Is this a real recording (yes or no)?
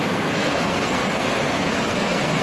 no